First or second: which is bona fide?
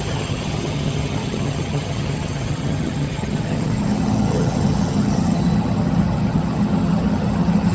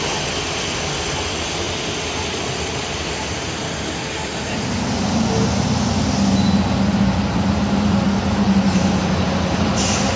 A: second